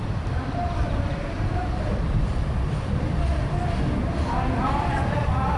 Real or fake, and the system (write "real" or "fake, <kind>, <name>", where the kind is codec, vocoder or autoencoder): fake, vocoder, BigVGAN v2